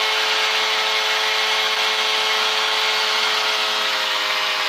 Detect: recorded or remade remade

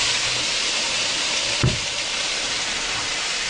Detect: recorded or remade remade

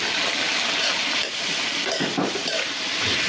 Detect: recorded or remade recorded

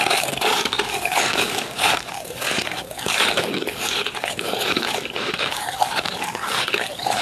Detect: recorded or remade remade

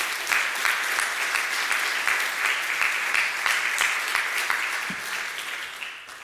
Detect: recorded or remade recorded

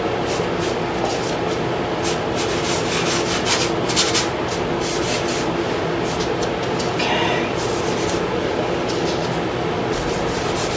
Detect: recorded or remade recorded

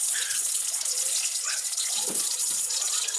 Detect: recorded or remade remade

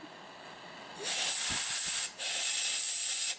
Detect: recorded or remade recorded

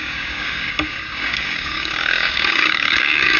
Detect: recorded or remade remade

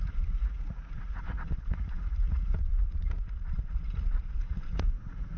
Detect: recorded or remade remade